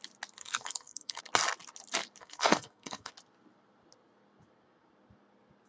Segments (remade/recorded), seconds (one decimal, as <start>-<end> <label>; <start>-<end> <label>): 0.0-0.4 recorded; 0.4-1.2 remade; 1.2-2.2 recorded; 2.2-3.1 remade; 3.1-5.7 recorded